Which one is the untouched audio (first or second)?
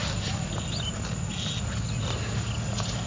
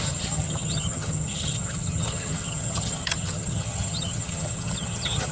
first